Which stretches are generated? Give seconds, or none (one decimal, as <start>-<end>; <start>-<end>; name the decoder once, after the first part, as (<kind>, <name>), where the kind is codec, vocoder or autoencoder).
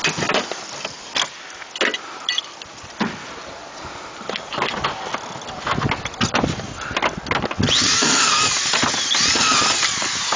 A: none